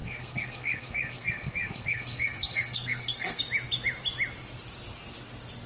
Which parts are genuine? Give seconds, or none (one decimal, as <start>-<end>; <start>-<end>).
3.4-5.7